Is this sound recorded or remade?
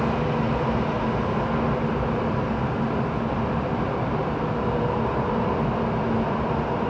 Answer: recorded